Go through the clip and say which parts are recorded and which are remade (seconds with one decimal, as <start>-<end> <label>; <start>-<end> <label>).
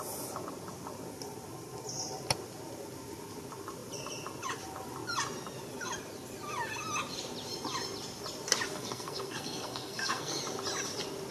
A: 0.0-8.7 recorded; 8.7-10.4 remade; 10.4-11.3 recorded